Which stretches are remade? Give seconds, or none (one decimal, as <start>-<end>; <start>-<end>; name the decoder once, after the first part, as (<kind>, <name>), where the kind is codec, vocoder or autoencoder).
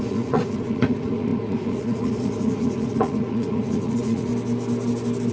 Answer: 0.0-4.3 (vocoder, Vocos)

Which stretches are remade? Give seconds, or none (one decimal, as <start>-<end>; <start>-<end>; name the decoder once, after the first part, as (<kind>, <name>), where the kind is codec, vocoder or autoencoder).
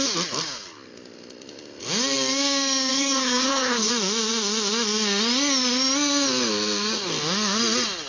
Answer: 2.9-3.9 (codec, HILCodec)